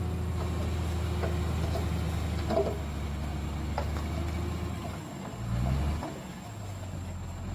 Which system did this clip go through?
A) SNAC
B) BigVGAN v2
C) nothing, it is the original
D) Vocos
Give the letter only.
C